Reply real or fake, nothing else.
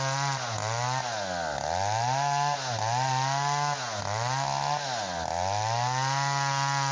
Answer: real